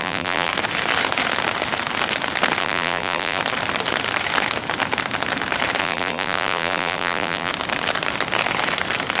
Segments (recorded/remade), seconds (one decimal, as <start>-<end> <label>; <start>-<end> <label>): 0.0-0.5 remade; 0.5-2.6 recorded; 2.6-3.4 remade; 3.4-5.8 recorded; 5.8-7.5 remade; 7.5-9.2 recorded